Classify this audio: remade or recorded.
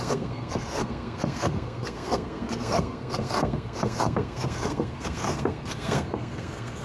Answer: remade